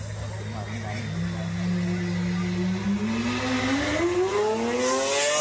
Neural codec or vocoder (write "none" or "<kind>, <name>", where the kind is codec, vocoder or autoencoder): none